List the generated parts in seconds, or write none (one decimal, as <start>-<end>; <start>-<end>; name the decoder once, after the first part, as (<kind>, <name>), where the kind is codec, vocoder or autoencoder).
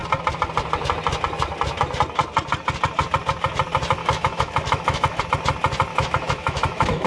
4.0-5.2 (autoencoder, DAC-VAE); 5.9-7.1